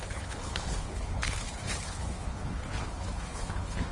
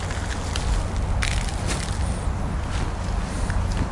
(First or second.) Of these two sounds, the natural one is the second